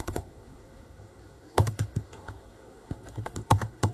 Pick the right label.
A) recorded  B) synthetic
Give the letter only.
B